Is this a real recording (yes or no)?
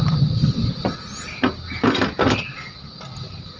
yes